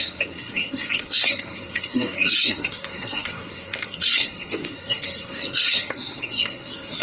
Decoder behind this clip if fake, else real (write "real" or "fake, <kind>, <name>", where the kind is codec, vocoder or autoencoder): fake, codec, SNAC